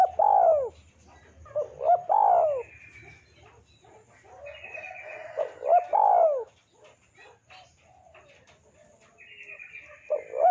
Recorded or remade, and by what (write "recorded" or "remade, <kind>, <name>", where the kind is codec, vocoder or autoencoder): recorded